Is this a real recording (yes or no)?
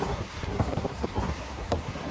no